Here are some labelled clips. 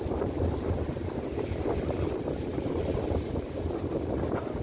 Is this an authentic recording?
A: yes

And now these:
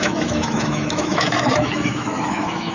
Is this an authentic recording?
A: no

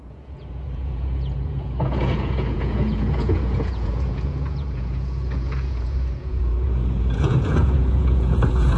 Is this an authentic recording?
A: no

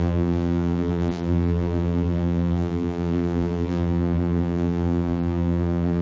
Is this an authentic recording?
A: no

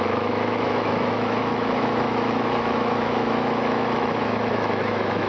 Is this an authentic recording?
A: no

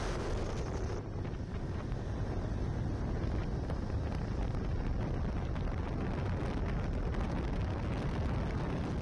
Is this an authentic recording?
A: yes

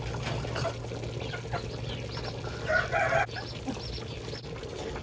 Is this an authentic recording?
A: yes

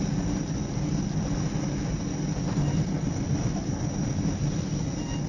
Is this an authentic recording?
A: yes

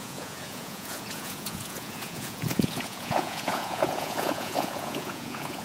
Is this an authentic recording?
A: no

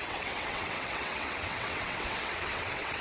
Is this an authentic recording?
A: no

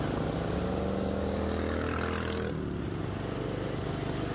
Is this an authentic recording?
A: yes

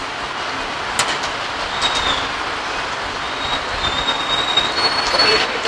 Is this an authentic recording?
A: yes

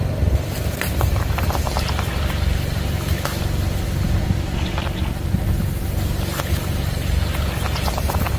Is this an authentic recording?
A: yes